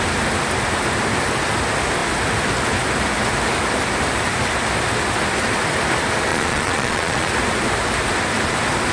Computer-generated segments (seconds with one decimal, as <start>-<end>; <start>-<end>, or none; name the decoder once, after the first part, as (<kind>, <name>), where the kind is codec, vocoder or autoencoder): 6.3-7.3 (vocoder, Vocos)